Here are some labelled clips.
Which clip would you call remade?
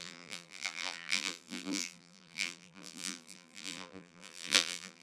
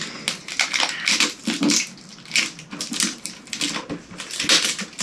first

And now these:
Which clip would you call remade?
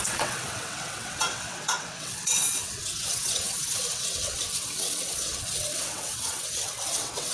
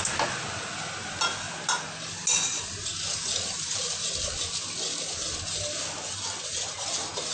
first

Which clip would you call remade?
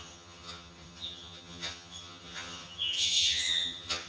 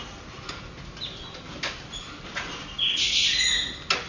first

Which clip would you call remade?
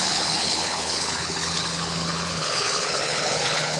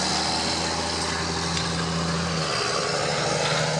first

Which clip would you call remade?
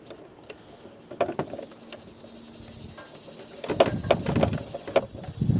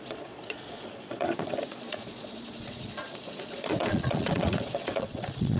second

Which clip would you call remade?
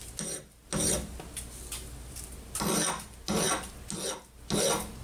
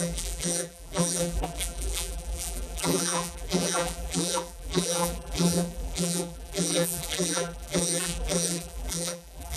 second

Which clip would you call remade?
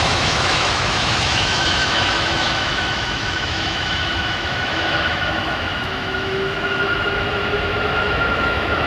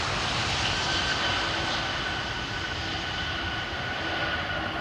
first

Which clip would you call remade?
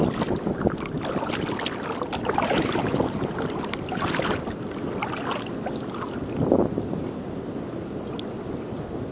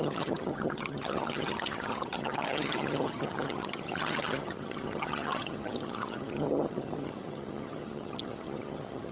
second